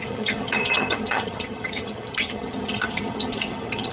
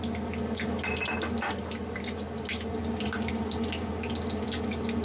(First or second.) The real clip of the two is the second